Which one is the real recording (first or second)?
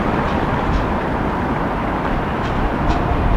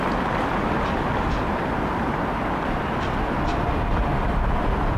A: second